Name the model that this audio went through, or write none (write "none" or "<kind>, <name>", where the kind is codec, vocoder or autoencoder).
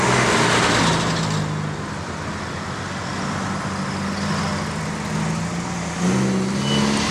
none